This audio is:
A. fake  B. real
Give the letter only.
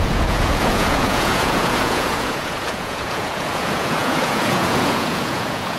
A